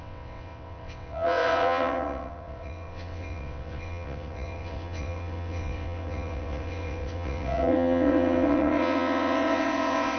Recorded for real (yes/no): no